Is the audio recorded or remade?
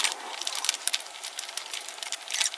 remade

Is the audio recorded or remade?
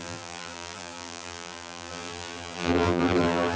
remade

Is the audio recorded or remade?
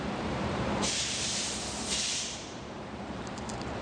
remade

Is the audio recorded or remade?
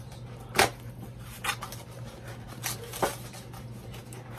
recorded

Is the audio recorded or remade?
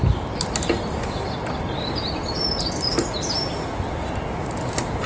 recorded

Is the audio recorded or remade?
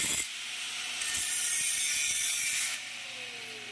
recorded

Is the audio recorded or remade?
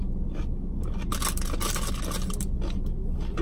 recorded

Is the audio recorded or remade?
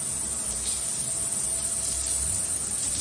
remade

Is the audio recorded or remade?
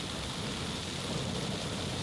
recorded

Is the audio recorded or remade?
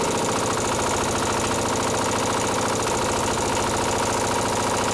recorded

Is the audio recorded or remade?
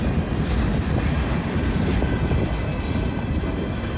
remade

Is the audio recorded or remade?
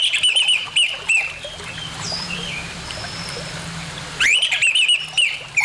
remade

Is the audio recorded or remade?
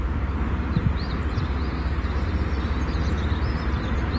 remade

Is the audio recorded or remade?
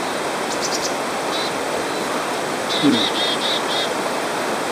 remade